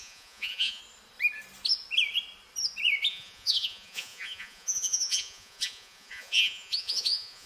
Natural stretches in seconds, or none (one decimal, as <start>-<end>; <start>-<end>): 0.8-3.1